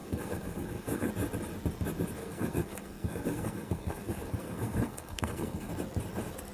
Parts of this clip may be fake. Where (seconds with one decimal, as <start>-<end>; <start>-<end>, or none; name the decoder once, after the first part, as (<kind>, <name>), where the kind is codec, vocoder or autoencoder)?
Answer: 0.0-1.1 (codec, SNAC); 2.2-5.7